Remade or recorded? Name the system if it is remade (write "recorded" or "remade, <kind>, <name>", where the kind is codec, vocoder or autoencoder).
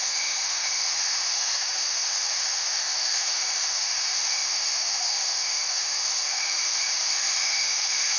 remade, autoencoder, DAC-VAE